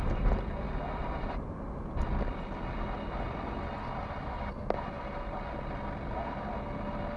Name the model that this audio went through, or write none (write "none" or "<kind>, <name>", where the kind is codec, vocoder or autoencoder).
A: none